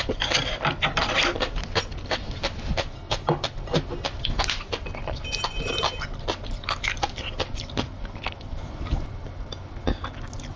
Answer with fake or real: real